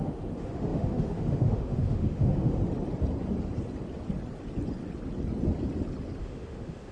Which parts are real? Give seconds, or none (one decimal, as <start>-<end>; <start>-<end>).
2.6-6.2